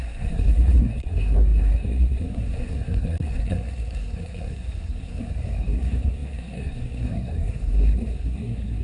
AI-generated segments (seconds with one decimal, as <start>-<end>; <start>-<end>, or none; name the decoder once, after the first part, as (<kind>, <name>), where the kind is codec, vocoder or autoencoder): 0.0-8.8 (codec, SNAC)